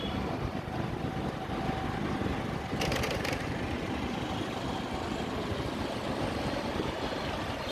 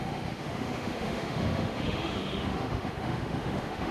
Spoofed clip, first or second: second